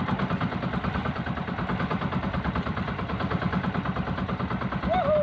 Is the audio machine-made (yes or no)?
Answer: no